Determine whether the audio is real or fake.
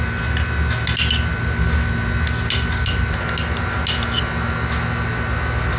real